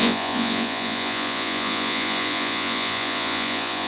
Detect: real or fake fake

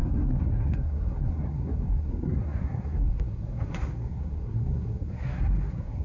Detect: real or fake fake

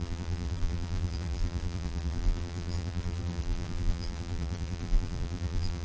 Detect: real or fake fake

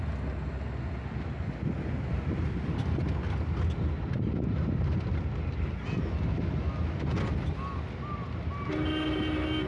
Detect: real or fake real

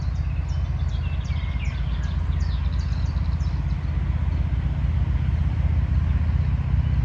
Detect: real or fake real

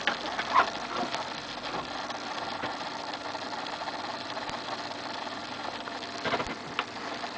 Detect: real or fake real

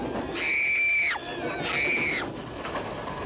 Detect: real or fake real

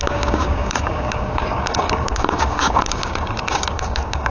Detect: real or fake fake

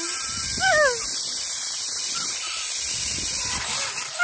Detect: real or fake real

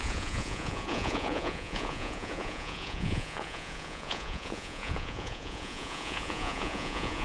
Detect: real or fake fake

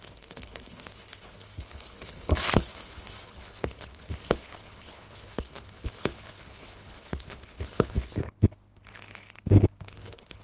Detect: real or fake fake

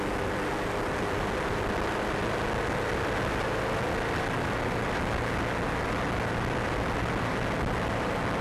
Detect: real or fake real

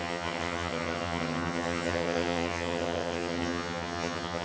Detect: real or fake fake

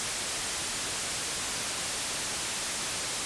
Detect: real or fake real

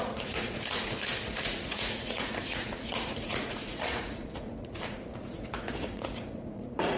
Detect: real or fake fake